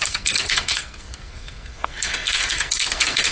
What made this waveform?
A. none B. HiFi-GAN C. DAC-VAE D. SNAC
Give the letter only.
D